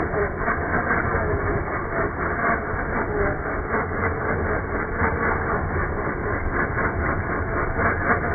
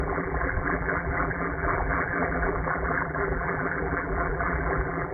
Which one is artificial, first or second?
second